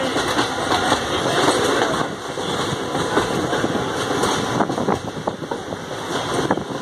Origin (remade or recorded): recorded